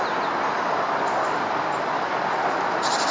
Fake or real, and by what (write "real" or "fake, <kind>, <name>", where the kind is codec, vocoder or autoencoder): real